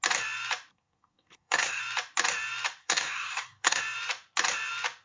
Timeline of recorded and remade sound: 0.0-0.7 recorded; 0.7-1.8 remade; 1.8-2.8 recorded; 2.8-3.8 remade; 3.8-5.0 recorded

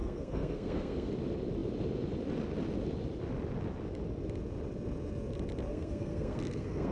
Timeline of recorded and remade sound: 0.0-1.1 remade; 1.1-5.7 recorded; 5.7-6.9 remade

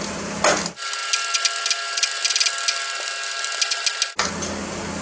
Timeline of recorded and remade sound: 0.0-5.0 recorded

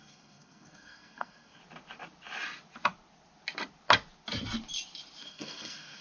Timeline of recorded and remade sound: 0.0-1.6 remade; 1.6-5.2 recorded; 5.2-6.0 remade

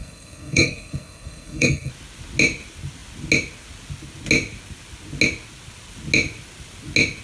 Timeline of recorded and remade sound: 0.0-1.9 remade; 1.9-7.2 recorded